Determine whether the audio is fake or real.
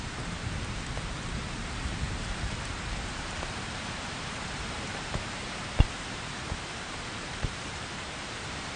fake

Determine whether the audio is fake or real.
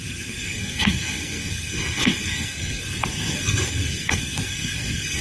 fake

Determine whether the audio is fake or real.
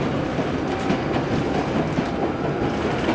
real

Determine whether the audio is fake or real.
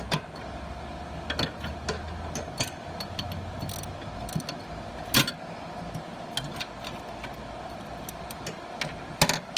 real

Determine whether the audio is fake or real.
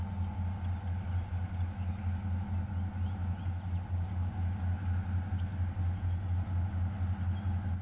real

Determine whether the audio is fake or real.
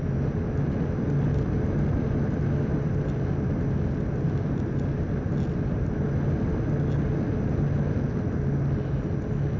real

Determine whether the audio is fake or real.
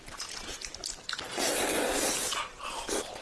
real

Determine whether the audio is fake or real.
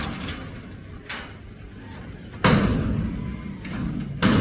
real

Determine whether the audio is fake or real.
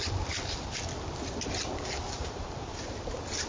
real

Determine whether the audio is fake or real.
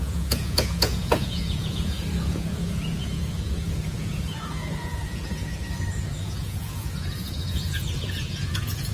fake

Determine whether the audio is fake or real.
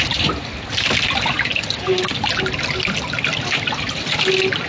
real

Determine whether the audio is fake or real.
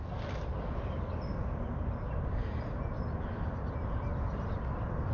real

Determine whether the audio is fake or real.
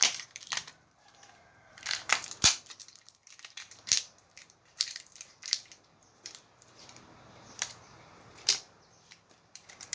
fake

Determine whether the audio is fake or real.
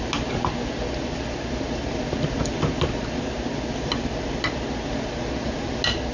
real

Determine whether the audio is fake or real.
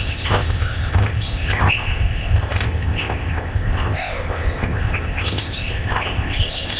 fake